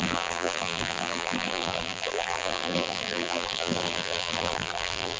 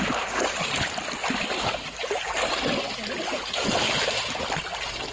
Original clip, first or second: second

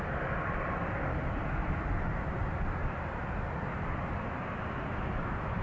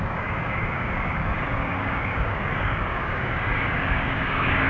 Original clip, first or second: first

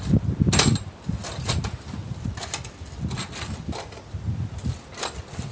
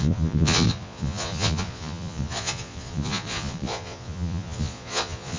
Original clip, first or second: first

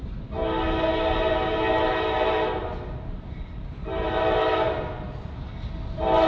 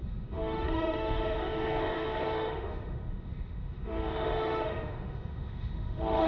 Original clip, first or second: first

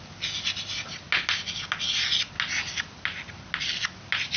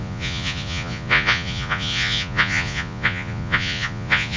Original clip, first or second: first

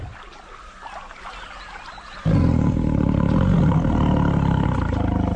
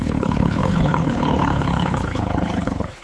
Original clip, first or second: first